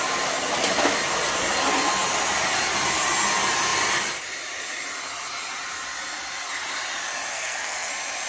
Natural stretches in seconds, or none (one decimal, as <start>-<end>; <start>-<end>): 0.0-7.3; 7.9-8.3